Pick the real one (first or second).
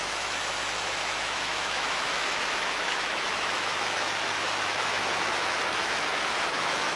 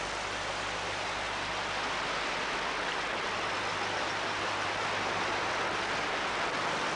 second